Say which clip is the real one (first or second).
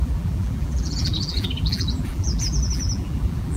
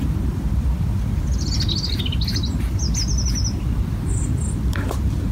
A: second